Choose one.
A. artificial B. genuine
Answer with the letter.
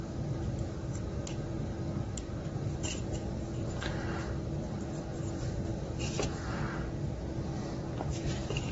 B